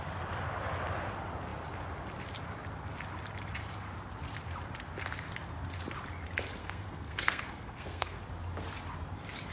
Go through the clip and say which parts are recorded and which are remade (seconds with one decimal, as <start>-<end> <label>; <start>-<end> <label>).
0.0-6.6 recorded; 6.6-8.2 remade; 8.2-9.5 recorded